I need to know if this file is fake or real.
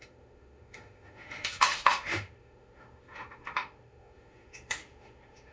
fake